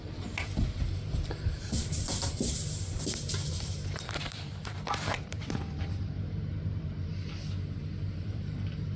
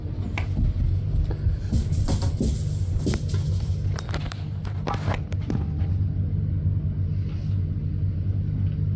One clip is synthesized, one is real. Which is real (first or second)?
second